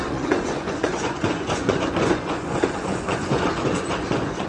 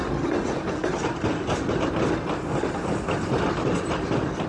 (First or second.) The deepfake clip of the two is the first